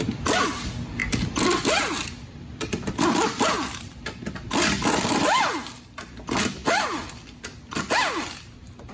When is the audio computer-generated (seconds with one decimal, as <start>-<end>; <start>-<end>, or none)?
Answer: 1.0-6.1